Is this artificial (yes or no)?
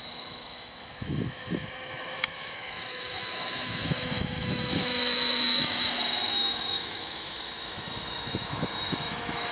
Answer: yes